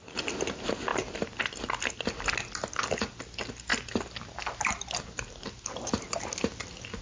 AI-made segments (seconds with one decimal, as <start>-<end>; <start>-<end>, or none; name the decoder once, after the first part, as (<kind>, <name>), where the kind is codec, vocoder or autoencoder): 0.9-1.9 (vocoder, BigVGAN v2)